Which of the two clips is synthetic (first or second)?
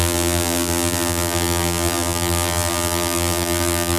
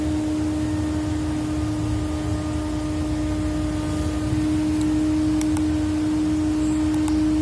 first